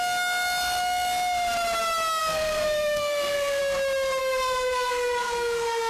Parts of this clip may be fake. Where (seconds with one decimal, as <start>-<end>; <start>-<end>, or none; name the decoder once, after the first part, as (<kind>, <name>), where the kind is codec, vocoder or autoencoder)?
2.2-3.6 (codec, SNAC); 4.2-5.9